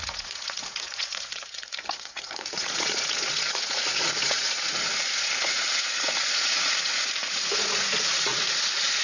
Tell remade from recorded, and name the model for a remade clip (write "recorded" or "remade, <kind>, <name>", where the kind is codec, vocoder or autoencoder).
remade, vocoder, Vocos